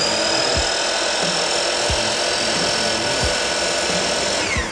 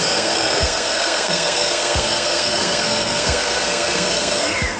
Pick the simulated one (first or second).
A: second